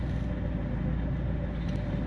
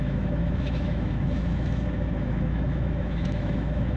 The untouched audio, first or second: first